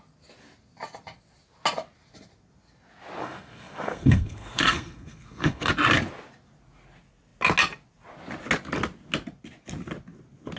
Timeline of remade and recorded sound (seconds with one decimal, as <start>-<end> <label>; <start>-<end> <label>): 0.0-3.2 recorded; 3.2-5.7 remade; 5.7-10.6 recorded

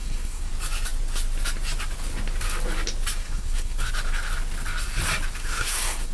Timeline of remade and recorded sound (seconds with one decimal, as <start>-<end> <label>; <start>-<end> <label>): 0.0-0.5 remade; 0.5-3.2 recorded; 3.2-3.9 remade; 3.9-5.4 recorded; 5.4-6.1 remade

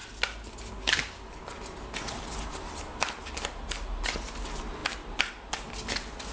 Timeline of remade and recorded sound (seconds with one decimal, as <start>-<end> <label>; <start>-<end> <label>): 0.0-6.3 recorded

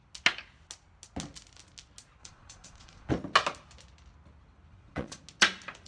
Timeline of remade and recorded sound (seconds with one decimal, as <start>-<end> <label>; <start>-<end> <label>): 0.0-2.2 recorded; 2.2-3.1 remade; 3.1-4.7 recorded; 4.7-5.2 remade; 5.2-5.9 recorded

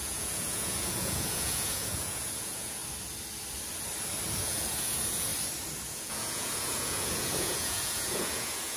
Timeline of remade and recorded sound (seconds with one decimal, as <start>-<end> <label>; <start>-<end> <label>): 0.0-2.8 remade; 2.8-4.4 recorded; 4.4-5.3 remade; 5.3-5.9 recorded; 5.9-8.8 remade

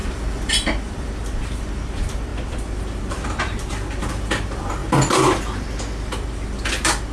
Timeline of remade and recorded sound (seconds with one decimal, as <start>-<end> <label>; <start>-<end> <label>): 0.0-7.1 remade

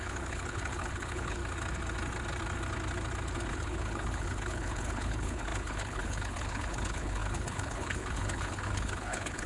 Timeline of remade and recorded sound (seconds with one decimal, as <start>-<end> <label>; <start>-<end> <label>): 0.0-1.4 remade; 1.4-3.5 recorded; 3.5-9.5 remade